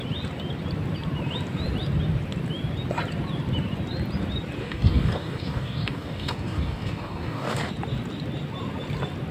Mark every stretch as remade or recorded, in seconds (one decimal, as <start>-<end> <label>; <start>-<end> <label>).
0.0-4.6 recorded; 4.6-7.7 remade; 7.7-9.3 recorded